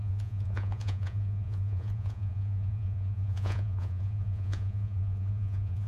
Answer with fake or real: fake